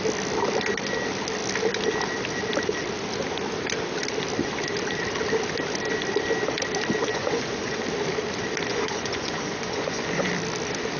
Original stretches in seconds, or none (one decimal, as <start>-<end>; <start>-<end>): 0.0-7.1; 7.8-8.7; 10.3-11.0